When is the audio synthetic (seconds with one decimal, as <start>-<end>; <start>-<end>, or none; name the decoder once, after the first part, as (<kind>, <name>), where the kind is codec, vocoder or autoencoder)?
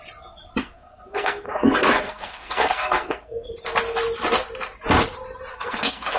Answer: 0.6-3.5 (codec, SNAC); 5.5-6.2